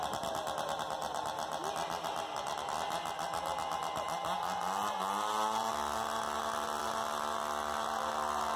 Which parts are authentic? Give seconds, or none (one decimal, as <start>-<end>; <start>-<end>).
0.0-8.6